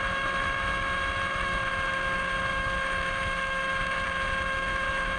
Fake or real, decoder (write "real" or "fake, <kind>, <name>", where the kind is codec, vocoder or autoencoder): fake, autoencoder, DAC-VAE